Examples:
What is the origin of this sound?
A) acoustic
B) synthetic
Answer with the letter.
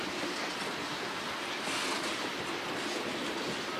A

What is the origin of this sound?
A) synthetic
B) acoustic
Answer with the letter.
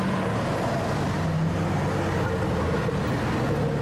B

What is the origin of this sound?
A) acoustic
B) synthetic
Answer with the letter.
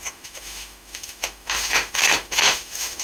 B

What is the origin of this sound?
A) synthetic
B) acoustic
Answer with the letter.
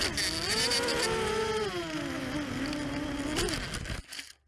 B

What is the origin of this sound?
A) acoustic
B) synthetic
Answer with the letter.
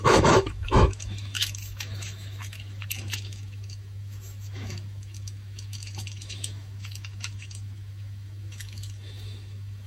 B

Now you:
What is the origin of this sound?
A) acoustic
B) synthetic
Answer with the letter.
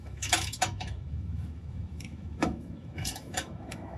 B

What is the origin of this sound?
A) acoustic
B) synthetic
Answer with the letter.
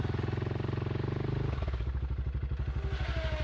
A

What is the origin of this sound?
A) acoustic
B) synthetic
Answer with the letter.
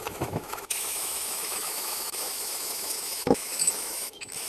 B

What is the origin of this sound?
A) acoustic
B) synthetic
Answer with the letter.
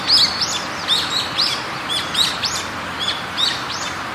A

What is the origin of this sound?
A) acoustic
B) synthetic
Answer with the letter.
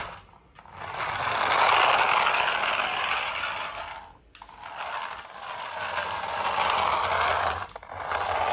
A